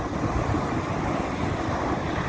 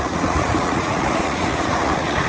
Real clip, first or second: first